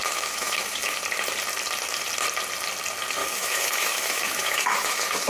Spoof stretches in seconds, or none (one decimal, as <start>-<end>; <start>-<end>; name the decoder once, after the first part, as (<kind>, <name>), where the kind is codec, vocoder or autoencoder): 0.0-1.0 (autoencoder, DAC-VAE); 3.2-5.3